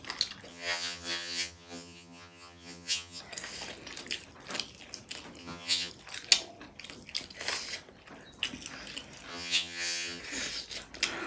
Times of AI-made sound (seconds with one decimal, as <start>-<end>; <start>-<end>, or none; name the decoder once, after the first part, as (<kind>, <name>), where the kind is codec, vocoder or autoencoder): 0.5-3.2 (vocoder, HiFi-GAN); 5.4-5.9; 9.3-10.2